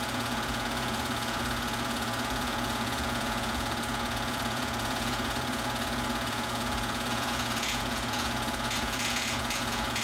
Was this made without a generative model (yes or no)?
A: no